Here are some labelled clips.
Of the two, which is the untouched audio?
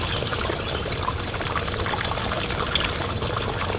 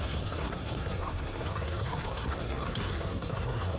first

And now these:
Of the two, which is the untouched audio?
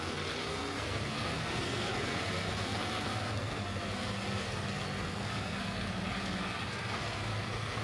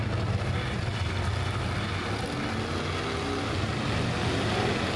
second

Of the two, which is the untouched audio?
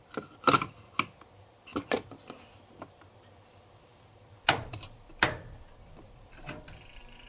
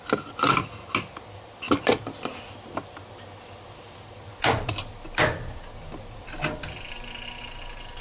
second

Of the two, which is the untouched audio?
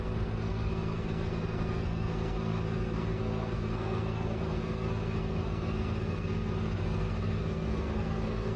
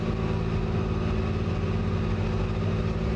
second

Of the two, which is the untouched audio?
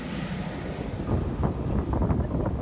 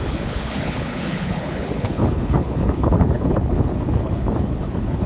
first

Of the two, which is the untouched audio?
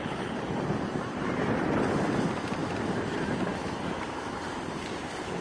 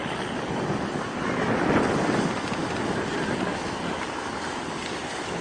second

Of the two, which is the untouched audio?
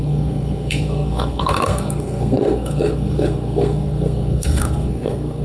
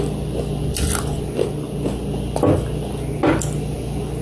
second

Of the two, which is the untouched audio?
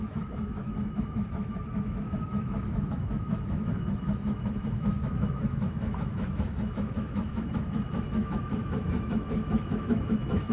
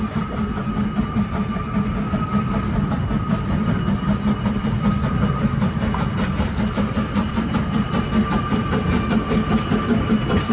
second